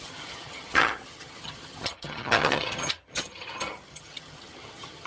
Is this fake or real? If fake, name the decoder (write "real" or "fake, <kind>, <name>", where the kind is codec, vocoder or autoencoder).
fake, vocoder, HiFi-GAN